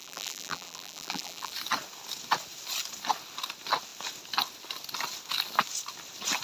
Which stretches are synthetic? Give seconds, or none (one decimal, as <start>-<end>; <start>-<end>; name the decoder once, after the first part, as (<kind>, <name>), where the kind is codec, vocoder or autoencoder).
0.0-1.5 (vocoder, BigVGAN v2)

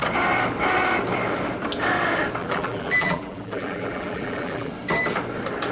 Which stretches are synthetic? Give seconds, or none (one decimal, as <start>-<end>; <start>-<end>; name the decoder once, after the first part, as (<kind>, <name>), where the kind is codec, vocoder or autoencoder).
2.4-4.7 (vocoder, BigVGAN v2)

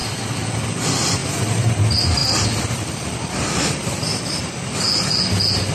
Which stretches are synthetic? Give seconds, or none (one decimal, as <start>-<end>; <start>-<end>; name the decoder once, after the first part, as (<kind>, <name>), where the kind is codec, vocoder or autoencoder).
1.2-1.7 (vocoder, BigVGAN v2); 2.2-4.4

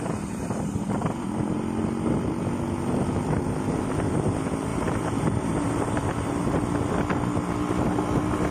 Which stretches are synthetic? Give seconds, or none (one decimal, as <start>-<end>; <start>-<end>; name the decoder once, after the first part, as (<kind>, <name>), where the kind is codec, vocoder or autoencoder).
4.7-6.6 (vocoder, BigVGAN v2)

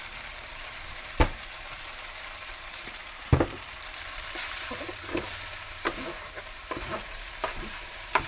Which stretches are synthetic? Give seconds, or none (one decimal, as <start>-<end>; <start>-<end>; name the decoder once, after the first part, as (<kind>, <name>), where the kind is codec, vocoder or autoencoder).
0.0-3.3 (vocoder, BigVGAN v2); 4.8-8.3